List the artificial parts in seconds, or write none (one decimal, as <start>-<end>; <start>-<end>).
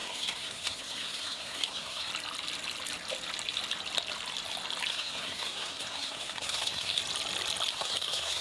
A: 0.0-2.1; 4.9-7.0; 7.7-8.4